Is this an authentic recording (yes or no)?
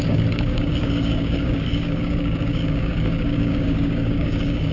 no